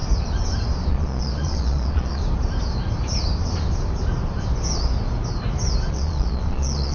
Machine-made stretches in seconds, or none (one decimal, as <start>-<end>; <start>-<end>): 0.9-2.2; 5.9-6.9